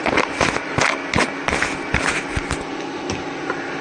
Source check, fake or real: real